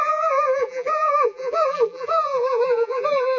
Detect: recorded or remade remade